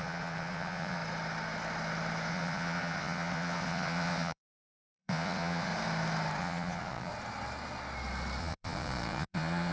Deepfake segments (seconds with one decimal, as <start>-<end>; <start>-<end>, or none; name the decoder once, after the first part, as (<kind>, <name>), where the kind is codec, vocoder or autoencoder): 0.0-1.0 (vocoder, Vocos); 2.3-5.7; 6.4-7.1; 8.4-9.7